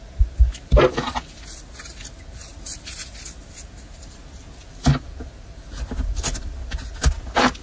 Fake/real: real